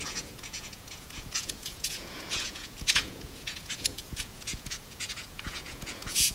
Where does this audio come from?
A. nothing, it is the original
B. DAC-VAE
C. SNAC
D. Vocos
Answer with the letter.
D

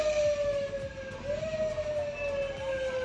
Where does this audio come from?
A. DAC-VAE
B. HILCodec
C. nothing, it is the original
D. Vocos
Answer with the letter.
C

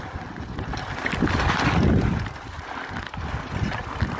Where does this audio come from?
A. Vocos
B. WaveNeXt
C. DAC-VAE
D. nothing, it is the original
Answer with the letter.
D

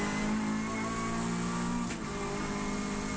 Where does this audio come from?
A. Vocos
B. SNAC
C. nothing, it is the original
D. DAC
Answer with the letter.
C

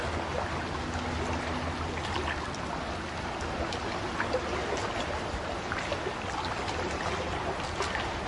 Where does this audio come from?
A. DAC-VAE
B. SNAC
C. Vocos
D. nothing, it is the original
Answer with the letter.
D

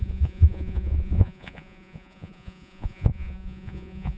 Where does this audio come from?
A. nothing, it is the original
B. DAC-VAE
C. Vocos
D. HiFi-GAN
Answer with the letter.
C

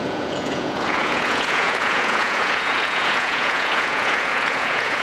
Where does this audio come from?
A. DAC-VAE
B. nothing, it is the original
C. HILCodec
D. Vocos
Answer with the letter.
D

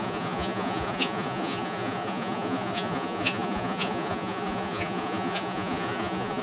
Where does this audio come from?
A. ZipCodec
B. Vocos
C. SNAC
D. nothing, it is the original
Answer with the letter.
B